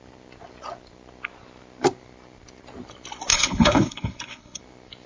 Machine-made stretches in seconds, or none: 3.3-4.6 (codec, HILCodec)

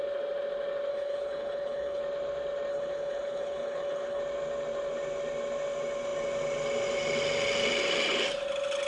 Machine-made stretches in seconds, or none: 0.9-2.0 (codec, HILCodec); 2.7-4.2

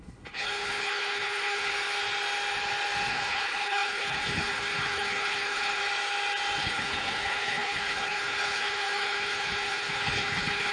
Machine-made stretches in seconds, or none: 0.0-1.7 (codec, HILCodec); 3.1-5.8; 6.6-10.7

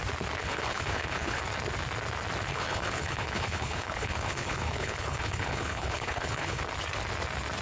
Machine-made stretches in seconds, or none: 0.4-1.4 (codec, HILCodec); 2.5-6.6

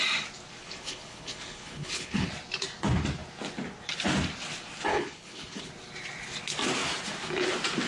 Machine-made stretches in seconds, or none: 0.6-2.3 (codec, HILCodec); 4.9-5.7

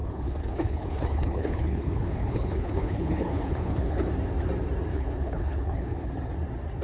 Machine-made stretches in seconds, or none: 0.0-4.1 (codec, HILCodec); 4.9-6.1